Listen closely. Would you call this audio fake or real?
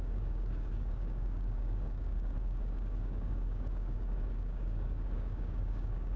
fake